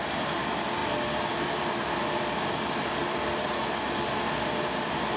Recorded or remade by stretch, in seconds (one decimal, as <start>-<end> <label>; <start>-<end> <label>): 0.0-3.0 recorded; 3.0-3.6 remade; 3.6-5.2 recorded